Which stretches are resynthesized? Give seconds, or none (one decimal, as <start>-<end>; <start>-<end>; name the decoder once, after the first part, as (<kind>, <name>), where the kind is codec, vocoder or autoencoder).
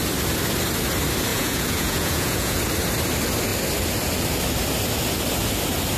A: 1.3-2.6 (vocoder, Vocos)